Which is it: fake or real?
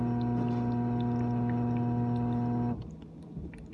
real